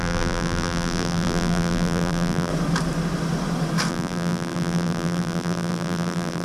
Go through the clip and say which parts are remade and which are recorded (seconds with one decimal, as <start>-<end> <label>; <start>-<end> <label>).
0.0-2.5 remade; 2.5-3.9 recorded; 3.9-6.4 remade